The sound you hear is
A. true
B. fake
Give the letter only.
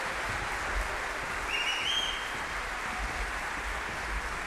A